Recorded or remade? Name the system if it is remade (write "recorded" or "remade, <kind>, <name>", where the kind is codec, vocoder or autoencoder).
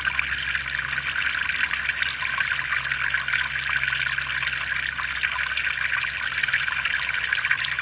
recorded